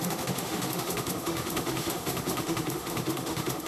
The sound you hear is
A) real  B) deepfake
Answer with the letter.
B